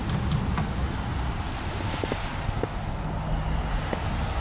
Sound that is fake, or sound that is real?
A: real